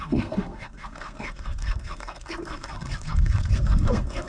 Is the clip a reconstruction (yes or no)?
yes